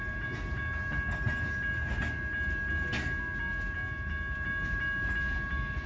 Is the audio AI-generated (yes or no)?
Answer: no